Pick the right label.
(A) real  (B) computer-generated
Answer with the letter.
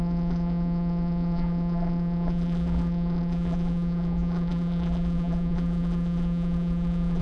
B